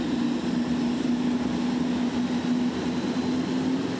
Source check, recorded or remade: recorded